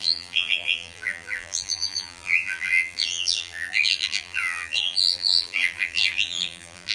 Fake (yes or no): yes